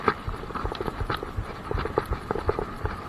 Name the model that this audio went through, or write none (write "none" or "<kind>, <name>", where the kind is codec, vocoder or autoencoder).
none